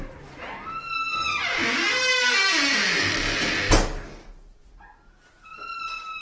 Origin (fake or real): real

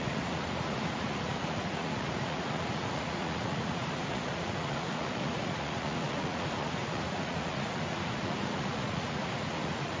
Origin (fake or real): fake